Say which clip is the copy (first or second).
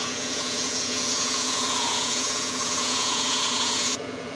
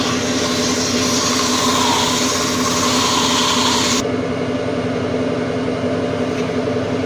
first